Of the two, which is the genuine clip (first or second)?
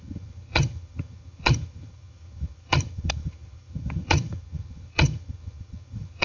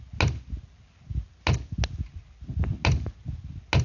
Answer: second